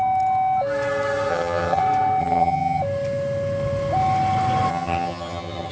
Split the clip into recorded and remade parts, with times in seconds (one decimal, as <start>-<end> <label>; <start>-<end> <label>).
0.0-1.3 recorded; 1.3-1.8 remade; 1.8-2.2 recorded; 2.2-2.8 remade; 2.8-4.7 recorded; 4.7-5.7 remade